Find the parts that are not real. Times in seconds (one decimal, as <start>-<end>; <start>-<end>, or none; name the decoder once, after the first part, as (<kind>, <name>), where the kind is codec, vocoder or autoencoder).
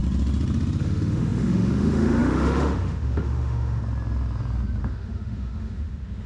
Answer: 0.8-3.8 (autoencoder, DAC-VAE); 4.8-6.3